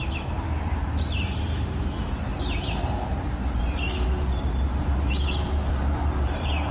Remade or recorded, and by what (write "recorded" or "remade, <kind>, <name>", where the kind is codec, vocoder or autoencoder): remade, vocoder, BigVGAN v2